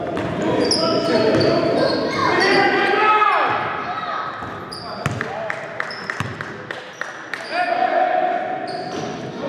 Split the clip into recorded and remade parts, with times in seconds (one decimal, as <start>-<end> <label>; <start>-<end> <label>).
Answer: 0.0-9.5 recorded